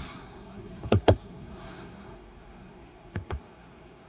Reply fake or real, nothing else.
fake